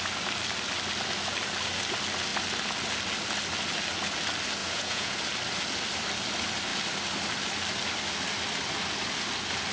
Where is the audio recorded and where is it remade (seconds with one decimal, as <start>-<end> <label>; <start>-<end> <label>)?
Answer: 0.0-4.6 recorded; 4.6-5.2 remade; 5.2-9.7 recorded